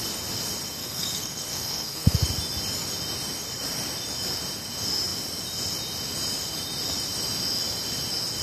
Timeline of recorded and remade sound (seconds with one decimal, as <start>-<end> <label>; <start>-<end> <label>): 0.0-0.8 recorded; 0.8-2.2 remade; 2.2-8.4 recorded